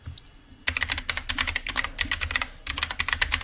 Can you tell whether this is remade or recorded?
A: recorded